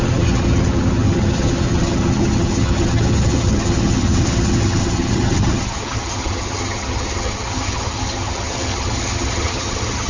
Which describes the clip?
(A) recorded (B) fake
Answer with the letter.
B